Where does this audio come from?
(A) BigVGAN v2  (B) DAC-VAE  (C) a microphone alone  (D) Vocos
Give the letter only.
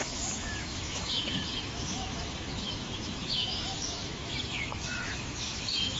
B